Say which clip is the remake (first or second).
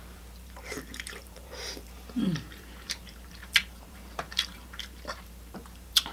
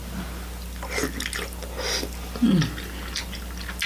first